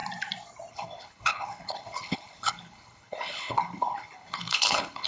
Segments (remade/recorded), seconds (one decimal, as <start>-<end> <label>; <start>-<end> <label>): 0.0-0.7 recorded; 0.7-5.1 remade